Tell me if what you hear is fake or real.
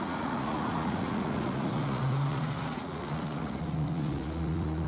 fake